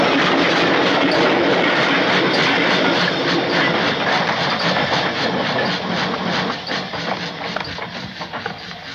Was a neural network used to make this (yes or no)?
no